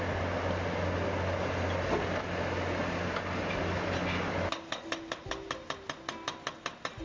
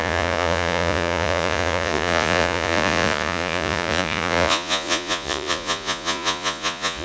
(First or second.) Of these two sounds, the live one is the first